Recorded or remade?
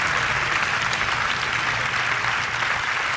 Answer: recorded